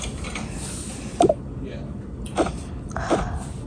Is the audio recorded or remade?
recorded